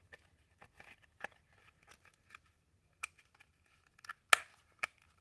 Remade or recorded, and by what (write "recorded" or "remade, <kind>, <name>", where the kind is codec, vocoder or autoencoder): recorded